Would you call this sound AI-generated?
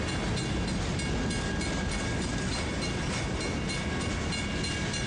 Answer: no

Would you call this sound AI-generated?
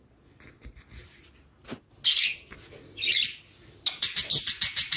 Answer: no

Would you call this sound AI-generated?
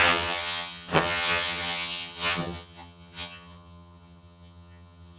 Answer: yes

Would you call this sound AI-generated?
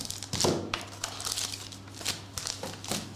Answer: no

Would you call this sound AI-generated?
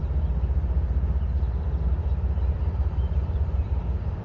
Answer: no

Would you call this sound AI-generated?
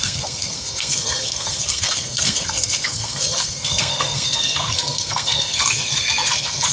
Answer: yes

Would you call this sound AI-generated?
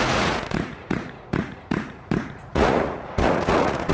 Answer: yes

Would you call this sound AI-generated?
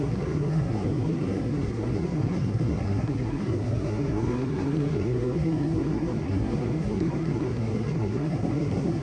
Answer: yes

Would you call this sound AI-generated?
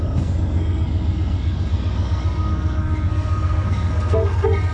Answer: yes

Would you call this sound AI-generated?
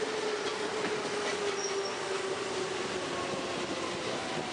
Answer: no